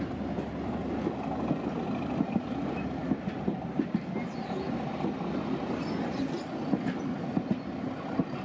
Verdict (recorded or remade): recorded